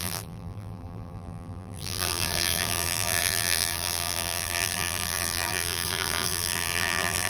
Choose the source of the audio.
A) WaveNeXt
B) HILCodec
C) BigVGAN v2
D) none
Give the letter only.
C